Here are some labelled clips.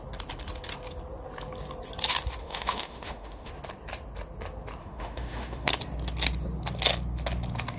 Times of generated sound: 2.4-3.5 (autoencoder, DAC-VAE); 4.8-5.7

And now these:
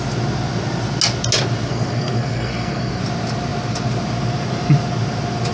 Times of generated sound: 1.7-3.0 (codec, SNAC)

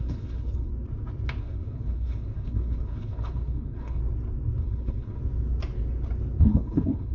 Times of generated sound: 0.0-0.7 (codec, HILCodec); 1.4-4.0; 4.6-5.2; 6.4-7.1

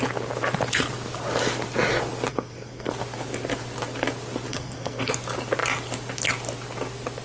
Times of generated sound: 2.3-2.9 (codec, SNAC); 4.5-5.1

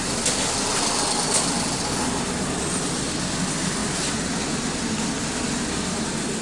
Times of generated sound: none

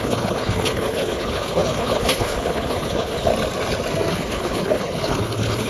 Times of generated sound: 0.0-3.3 (codec, HILCodec); 4.1-5.7

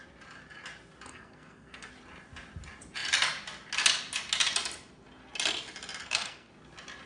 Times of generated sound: 1.1-1.9 (codec, SNAC); 6.0-6.5